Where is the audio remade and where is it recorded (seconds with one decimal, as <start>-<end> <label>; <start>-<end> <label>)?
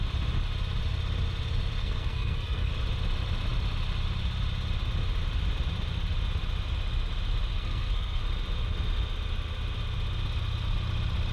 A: 0.0-1.8 recorded; 1.8-2.7 remade; 2.7-7.5 recorded; 7.5-8.2 remade; 8.2-11.3 recorded